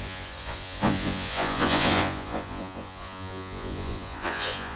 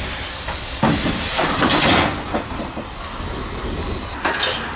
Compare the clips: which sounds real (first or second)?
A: second